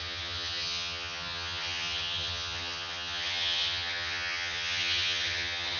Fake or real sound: fake